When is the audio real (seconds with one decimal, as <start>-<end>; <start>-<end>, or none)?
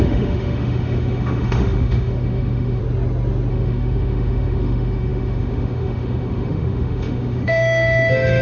2.8-3.5